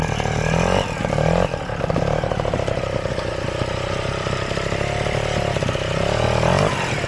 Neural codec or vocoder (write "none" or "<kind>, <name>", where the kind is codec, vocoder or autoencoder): none